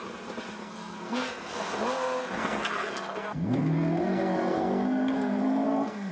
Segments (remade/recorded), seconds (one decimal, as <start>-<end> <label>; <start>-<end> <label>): 0.0-0.6 recorded; 0.6-1.8 remade; 1.8-2.2 recorded; 2.2-6.1 remade